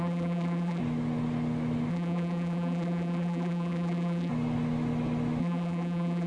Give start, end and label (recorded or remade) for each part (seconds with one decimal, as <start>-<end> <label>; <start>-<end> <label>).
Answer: 0.0-0.8 remade; 0.8-1.9 recorded; 1.9-4.3 remade; 4.3-5.4 recorded; 5.4-6.3 remade